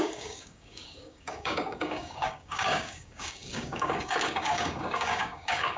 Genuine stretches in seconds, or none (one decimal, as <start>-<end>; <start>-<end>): none